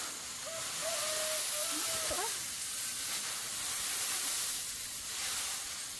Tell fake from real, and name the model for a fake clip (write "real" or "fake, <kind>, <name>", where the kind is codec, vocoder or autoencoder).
real